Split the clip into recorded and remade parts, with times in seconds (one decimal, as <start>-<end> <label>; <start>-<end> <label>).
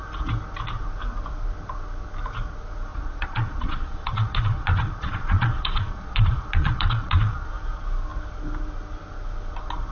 0.0-2.9 recorded; 2.9-7.5 remade; 7.5-9.9 recorded